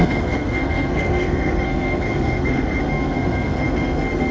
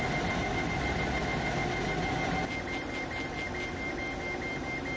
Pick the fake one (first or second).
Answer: first